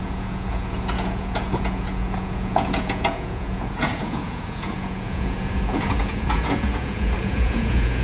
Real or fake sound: fake